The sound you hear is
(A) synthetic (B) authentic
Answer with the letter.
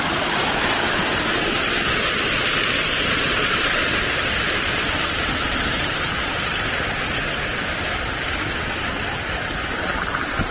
A